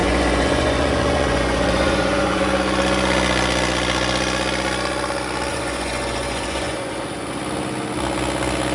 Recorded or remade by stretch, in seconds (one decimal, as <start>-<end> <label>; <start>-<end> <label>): 0.0-2.4 remade; 2.4-5.5 recorded; 5.5-7.4 remade; 7.4-8.7 recorded

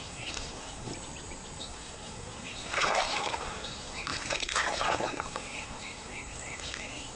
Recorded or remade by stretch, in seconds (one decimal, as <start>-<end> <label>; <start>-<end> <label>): 0.0-0.9 remade; 0.9-1.6 recorded; 1.6-7.2 remade

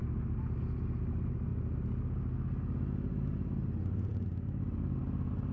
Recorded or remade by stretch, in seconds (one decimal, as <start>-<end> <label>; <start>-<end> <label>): 0.0-5.5 recorded